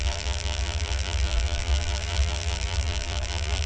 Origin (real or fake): fake